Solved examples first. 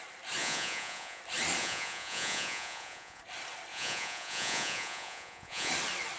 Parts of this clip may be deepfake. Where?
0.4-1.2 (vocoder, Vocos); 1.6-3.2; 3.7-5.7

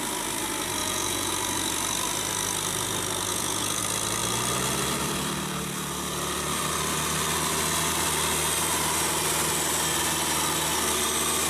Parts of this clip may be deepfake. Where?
0.8-1.3 (vocoder, Vocos); 3.3-3.8

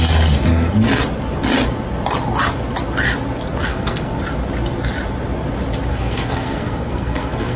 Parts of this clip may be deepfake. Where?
3.7-4.2 (codec, SNAC); 5.9-7.6

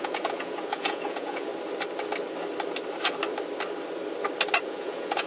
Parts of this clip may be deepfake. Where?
0.0-1.5 (vocoder, Vocos); 4.7-5.3

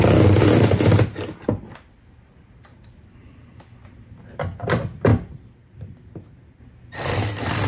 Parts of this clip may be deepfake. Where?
none

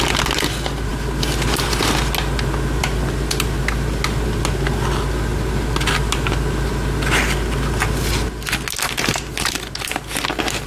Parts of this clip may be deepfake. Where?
none